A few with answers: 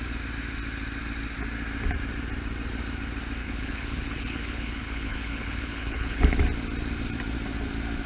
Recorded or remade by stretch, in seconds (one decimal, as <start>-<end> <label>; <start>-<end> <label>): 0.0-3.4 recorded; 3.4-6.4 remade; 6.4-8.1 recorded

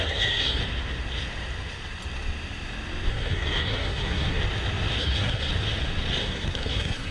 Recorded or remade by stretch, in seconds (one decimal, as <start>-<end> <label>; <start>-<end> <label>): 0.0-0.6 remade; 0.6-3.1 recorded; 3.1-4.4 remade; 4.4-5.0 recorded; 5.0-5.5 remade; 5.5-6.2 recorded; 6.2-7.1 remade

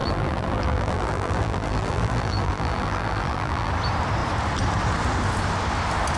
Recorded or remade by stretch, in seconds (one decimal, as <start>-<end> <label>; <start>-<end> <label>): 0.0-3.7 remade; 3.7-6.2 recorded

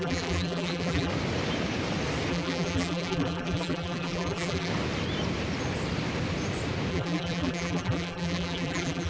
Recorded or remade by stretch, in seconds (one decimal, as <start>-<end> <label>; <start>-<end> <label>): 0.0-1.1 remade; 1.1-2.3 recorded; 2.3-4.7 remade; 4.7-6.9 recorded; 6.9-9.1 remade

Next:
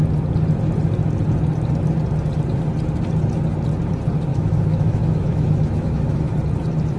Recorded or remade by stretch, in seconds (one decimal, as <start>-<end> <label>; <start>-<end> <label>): 0.0-4.3 recorded; 4.3-6.3 remade; 6.3-7.0 recorded

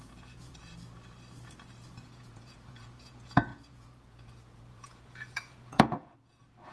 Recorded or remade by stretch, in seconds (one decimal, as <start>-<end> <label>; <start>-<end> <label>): 0.0-0.6 remade; 0.6-1.9 recorded; 1.9-6.7 remade

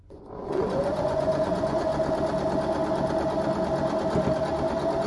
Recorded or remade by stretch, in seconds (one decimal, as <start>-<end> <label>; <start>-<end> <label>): 0.0-1.9 remade; 1.9-5.1 recorded